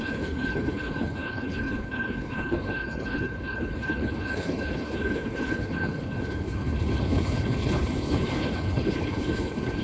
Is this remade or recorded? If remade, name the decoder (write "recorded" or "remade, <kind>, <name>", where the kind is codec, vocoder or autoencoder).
remade, codec, HILCodec